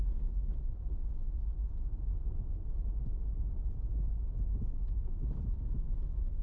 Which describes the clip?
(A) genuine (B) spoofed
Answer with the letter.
A